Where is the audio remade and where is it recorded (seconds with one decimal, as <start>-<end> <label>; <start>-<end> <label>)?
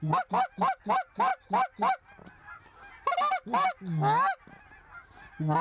0.0-5.6 recorded